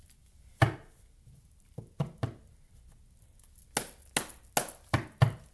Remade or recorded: recorded